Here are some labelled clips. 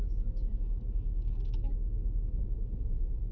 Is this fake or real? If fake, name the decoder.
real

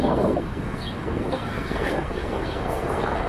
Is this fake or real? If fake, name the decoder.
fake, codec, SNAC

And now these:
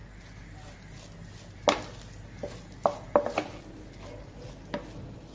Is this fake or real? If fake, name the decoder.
real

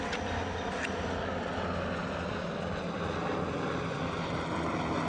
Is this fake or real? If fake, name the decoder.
real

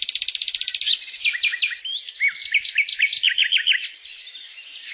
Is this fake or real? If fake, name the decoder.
real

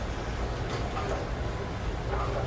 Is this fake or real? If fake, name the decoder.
real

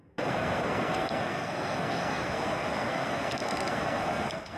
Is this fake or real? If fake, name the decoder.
fake, codec, SNAC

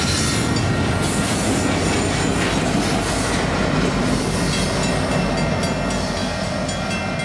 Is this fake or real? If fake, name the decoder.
real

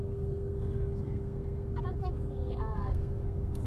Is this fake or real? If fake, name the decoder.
fake, codec, SNAC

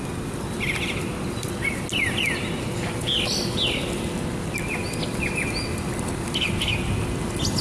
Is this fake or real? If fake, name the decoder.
real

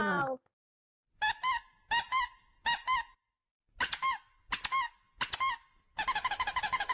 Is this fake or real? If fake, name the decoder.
real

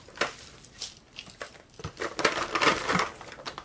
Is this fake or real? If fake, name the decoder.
real